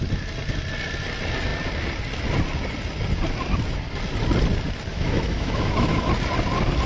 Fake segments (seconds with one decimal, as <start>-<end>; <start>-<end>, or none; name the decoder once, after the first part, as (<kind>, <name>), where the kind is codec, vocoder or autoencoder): 4.9-6.1 (autoencoder, DAC-VAE)